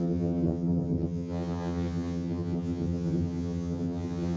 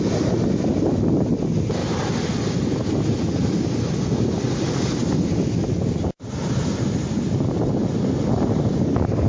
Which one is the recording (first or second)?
second